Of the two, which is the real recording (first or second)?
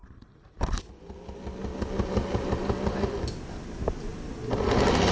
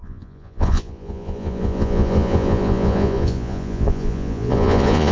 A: first